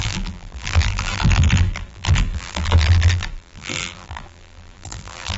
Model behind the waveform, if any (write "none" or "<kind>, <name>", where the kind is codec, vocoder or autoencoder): vocoder, BigVGAN v2